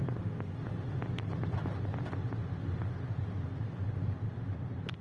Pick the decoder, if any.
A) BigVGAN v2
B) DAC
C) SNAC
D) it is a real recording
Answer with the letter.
D